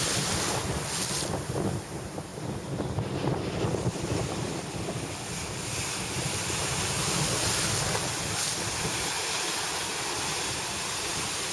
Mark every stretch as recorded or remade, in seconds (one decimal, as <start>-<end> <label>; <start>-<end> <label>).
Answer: 0.0-11.5 recorded

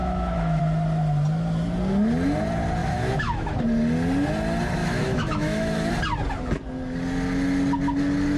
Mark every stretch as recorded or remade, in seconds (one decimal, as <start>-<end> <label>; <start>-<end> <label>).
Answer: 0.0-0.6 remade; 0.6-2.8 recorded; 2.8-3.6 remade; 3.6-4.8 recorded; 4.8-5.9 remade; 5.9-8.4 recorded

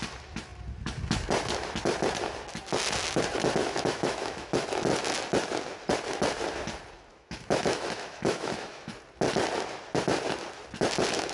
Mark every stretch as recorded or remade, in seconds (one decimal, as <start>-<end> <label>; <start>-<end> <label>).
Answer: 0.0-3.6 recorded; 3.6-4.5 remade; 4.5-7.1 recorded; 7.1-8.9 remade; 8.9-11.3 recorded

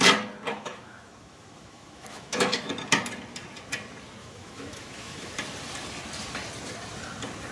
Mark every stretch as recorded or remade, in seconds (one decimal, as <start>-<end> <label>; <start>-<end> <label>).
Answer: 0.0-0.5 recorded; 0.5-2.7 remade; 2.7-4.2 recorded; 4.2-5.3 remade; 5.3-7.5 recorded

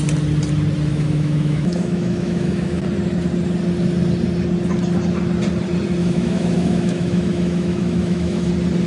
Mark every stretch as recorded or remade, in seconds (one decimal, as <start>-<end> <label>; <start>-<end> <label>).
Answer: 0.0-0.9 recorded; 0.9-2.8 remade; 2.8-6.0 recorded; 6.0-8.5 remade; 8.5-8.9 recorded

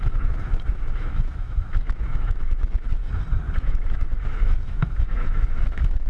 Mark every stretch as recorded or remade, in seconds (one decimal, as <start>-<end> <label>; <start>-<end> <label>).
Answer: 0.0-3.0 remade; 3.0-3.6 recorded; 3.6-6.1 remade

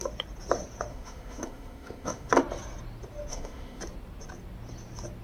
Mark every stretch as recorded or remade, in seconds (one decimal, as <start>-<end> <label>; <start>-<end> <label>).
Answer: 0.0-0.9 recorded; 0.9-2.3 remade; 2.3-3.3 recorded; 3.3-3.8 remade; 3.8-5.2 recorded

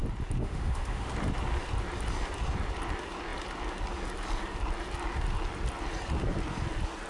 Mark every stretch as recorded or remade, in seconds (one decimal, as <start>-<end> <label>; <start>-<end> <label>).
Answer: 0.0-0.4 recorded; 0.4-1.1 remade; 1.1-7.1 recorded